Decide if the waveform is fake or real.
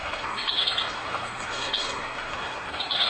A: fake